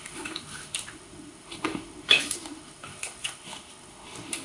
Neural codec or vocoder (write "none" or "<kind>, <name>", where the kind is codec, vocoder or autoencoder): autoencoder, DAC-VAE